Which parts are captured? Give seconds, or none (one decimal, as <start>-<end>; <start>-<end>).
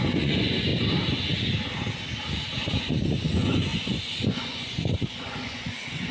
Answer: 0.7-2.8